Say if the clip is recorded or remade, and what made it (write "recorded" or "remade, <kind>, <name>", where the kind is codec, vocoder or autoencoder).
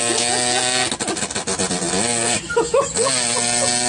recorded